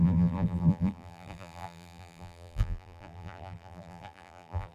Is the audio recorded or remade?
remade